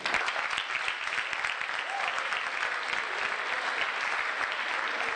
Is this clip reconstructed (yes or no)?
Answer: no